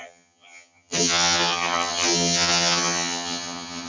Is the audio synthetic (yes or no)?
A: yes